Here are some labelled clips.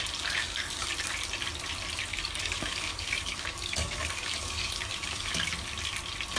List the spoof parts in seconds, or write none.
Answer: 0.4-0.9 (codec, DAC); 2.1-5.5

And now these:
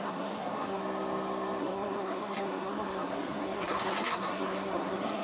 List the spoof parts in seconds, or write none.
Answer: 0.0-0.8 (codec, SNAC); 1.6-5.2

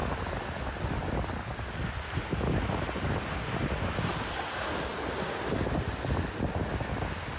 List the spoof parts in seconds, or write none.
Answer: none

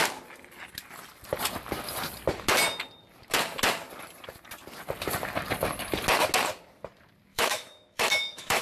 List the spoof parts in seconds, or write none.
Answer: 7.3-8.6 (autoencoder, DAC-VAE)

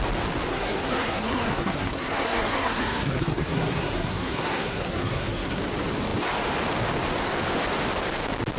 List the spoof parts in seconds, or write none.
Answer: 0.5-5.6 (codec, SNAC)

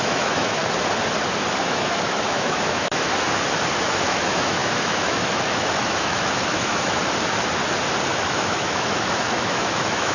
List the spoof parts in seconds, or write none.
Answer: 0.0-0.6 (autoencoder, DAC-VAE); 1.6-3.1; 3.8-7.0; 8.1-10.1

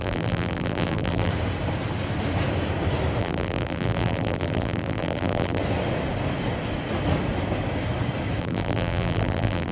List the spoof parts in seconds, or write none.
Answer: 0.0-1.3 (vocoder, BigVGAN v2); 3.2-5.6; 8.4-9.7